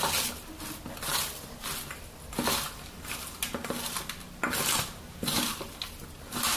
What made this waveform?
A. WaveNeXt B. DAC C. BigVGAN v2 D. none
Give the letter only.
D